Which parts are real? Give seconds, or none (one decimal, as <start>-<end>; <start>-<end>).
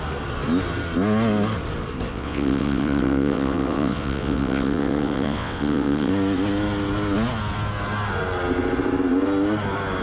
0.0-2.1; 6.1-10.0